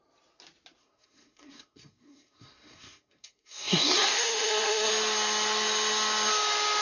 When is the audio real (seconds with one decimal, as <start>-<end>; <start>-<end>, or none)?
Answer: 0.0-0.8; 4.9-6.8